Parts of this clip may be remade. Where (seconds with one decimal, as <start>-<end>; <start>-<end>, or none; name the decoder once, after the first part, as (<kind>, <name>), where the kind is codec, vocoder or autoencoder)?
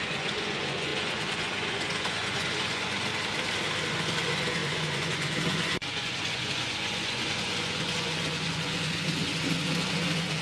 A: 0.0-3.1 (vocoder, Vocos); 3.9-10.4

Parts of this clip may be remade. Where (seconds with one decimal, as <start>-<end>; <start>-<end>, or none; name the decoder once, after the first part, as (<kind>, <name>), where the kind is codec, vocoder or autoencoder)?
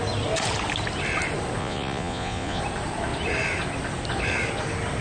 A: 1.6-2.6 (vocoder, Vocos)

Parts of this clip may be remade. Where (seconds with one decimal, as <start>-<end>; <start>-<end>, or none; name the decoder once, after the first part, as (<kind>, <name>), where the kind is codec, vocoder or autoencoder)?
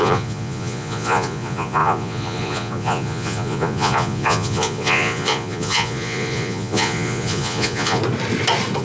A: 0.0-8.0 (vocoder, Vocos)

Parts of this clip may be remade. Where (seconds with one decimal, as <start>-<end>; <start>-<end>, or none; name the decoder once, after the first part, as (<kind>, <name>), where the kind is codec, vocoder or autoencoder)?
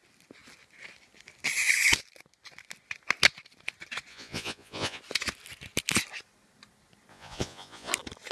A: 4.1-5.0 (vocoder, Vocos); 7.1-7.9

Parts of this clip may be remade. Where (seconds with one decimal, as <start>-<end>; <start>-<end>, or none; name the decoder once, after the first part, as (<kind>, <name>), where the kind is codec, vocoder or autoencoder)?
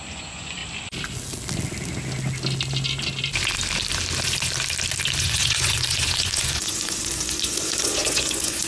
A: 0.0-0.6 (vocoder, Vocos); 5.2-8.7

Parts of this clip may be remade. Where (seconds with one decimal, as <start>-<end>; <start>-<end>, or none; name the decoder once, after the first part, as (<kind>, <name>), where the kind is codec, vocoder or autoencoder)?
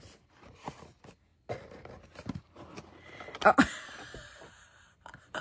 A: none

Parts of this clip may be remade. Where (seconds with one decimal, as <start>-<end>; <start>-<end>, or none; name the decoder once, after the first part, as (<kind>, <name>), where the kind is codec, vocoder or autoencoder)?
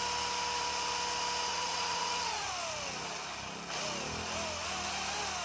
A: 1.5-2.5 (vocoder, Vocos)